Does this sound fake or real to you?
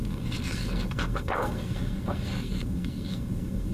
fake